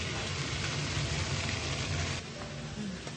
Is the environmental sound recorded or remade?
recorded